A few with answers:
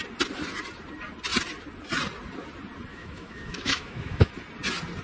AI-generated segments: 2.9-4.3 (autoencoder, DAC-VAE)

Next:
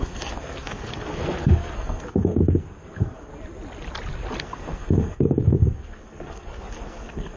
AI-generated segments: 0.0-3.3 (codec, SNAC); 4.4-7.4

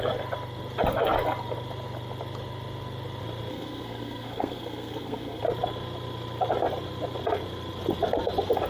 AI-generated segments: 3.5-5.4 (codec, SNAC)

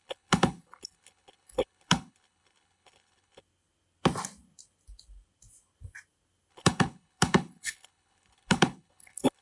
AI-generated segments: 0.0-3.4 (codec, HILCodec); 6.5-9.4

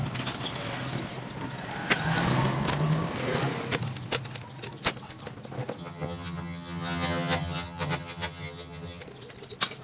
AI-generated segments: 5.8-9.0 (vocoder, HiFi-GAN)

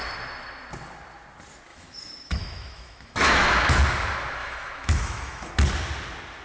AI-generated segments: 1.7-3.8 (autoencoder, DAC-VAE); 4.4-5.5

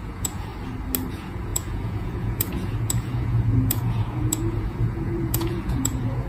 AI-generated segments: 0.0-0.5 (vocoder, Vocos); 1.1-6.3